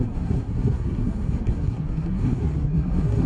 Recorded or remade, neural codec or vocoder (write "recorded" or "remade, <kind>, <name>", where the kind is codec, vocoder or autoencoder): remade, codec, SNAC